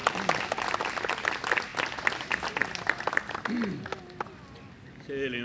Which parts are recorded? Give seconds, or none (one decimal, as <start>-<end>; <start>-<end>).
0.0-5.4